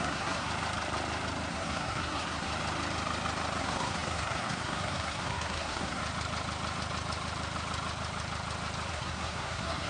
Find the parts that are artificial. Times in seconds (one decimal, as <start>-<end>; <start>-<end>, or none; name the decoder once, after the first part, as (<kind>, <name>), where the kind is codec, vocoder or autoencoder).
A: 0.0-0.5 (codec, SNAC); 1.5-2.5; 3.6-6.0; 8.9-9.9

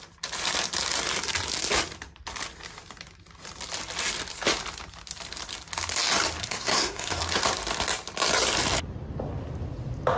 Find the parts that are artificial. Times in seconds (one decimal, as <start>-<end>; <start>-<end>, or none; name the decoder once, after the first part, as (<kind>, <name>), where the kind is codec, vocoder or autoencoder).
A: 6.4-7.2 (codec, SNAC)

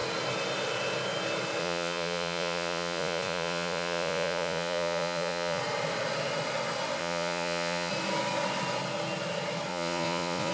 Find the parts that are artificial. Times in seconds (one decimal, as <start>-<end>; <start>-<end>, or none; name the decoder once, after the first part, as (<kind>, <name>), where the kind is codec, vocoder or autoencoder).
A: 1.6-5.6 (vocoder, Vocos); 7.0-7.9; 9.7-10.5